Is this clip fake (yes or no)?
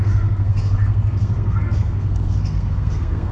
yes